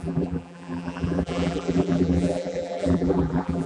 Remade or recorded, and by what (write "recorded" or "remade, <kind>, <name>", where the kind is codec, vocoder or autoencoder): remade, vocoder, BigVGAN v2